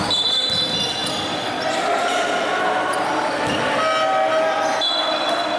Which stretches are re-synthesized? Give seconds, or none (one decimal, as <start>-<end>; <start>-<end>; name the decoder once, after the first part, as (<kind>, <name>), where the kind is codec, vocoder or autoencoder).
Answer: none